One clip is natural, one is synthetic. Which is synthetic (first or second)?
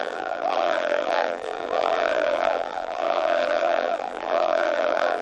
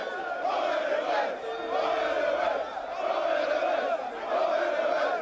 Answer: first